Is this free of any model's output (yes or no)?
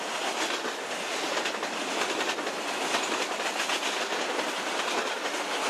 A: yes